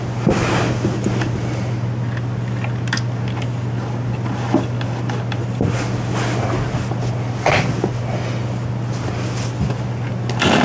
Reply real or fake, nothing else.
real